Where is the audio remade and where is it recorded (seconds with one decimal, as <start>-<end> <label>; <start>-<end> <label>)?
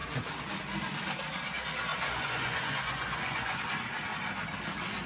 0.0-1.9 recorded; 1.9-3.6 remade; 3.6-5.1 recorded